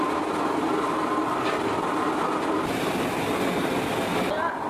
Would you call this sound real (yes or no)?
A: yes